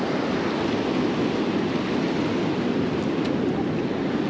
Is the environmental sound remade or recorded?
recorded